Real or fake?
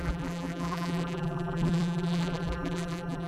fake